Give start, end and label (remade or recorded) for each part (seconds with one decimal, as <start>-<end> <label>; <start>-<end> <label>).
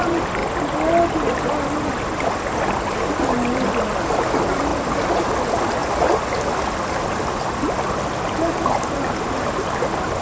0.0-4.7 recorded; 4.7-5.3 remade; 5.3-10.2 recorded